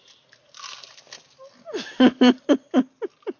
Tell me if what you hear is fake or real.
real